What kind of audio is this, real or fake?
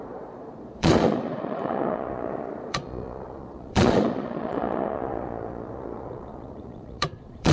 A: fake